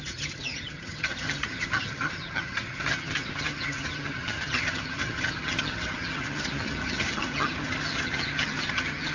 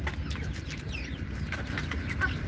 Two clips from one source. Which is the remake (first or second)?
first